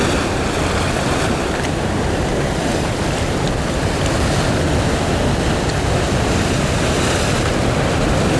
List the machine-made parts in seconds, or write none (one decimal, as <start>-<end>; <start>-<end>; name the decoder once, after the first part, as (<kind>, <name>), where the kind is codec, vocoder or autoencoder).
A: none